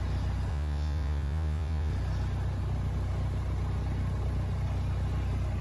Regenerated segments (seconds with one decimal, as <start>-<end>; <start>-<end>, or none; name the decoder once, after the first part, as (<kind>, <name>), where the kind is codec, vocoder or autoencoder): 0.5-1.9 (vocoder, Vocos)